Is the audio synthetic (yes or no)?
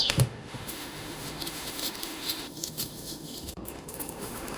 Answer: yes